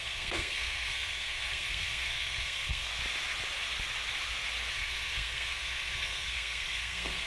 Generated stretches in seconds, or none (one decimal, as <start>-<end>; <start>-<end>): 0.0-2.9; 4.7-7.3